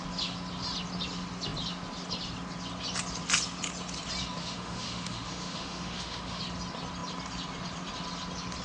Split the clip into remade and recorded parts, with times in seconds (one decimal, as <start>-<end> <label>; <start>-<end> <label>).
0.0-4.4 recorded; 4.4-6.4 remade; 6.4-8.6 recorded

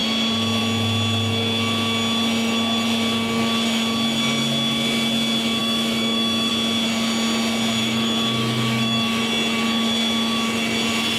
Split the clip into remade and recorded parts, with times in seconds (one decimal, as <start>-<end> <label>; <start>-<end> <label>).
0.0-5.6 recorded; 5.6-6.5 remade; 6.5-7.8 recorded; 7.8-9.2 remade; 9.2-11.2 recorded

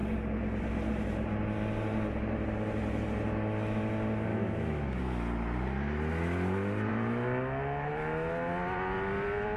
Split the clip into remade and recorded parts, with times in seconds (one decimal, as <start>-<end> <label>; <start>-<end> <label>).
0.0-4.3 recorded; 4.3-5.0 remade; 5.0-9.6 recorded

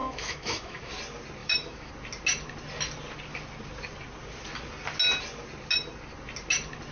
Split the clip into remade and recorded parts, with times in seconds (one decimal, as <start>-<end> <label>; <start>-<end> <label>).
0.0-0.9 remade; 0.9-1.4 recorded; 1.4-1.9 remade; 1.9-6.9 recorded

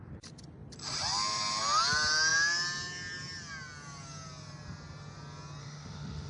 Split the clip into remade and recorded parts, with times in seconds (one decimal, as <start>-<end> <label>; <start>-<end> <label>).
0.0-5.6 recorded; 5.6-6.3 remade

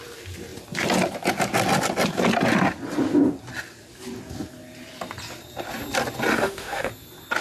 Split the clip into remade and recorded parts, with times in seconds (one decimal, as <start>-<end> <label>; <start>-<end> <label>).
0.0-6.3 recorded; 6.3-6.9 remade; 6.9-7.4 recorded

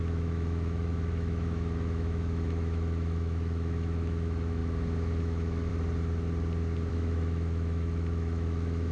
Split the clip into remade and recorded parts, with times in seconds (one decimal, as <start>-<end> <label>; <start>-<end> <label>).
0.0-4.6 remade; 4.6-5.2 recorded; 5.2-5.7 remade; 5.7-6.9 recorded; 6.9-8.9 remade

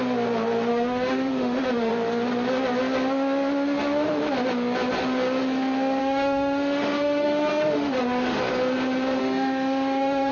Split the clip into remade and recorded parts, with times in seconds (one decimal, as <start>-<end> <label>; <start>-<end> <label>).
0.0-0.7 recorded; 0.7-1.9 remade; 1.9-6.0 recorded; 6.0-8.4 remade; 8.4-9.2 recorded; 9.2-10.3 remade